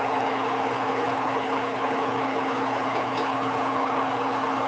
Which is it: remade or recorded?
remade